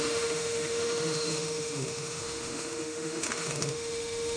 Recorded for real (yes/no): no